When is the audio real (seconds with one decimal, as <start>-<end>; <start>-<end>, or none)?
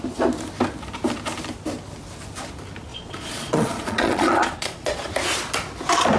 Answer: 0.0-2.9; 5.1-6.2